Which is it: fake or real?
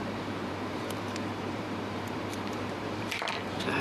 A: fake